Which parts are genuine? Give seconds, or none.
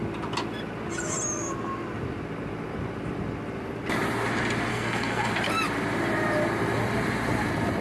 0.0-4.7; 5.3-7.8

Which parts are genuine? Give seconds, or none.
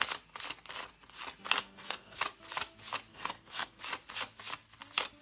0.0-1.6; 2.2-3.1; 3.8-5.2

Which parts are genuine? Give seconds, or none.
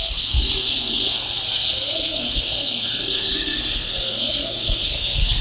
none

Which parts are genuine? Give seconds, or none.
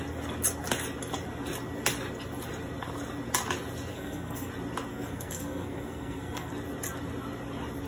0.0-3.9; 4.5-4.9; 6.5-7.9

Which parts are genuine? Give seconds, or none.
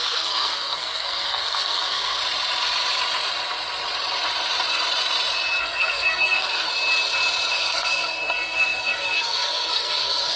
2.2-5.6; 6.7-7.5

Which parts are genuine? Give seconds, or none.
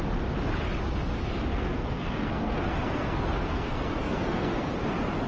0.0-1.5; 4.7-5.3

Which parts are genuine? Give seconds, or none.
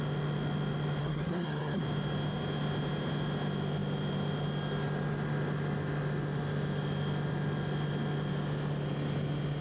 0.0-1.0; 1.8-9.6